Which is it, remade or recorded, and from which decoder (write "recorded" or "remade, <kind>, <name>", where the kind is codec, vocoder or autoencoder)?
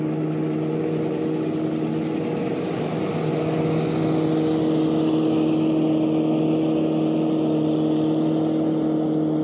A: recorded